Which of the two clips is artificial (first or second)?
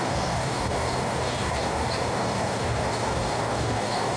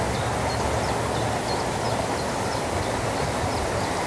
first